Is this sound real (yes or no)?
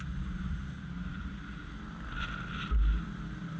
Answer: no